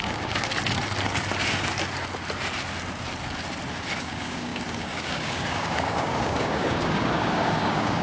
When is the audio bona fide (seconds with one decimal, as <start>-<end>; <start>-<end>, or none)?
0.5-4.0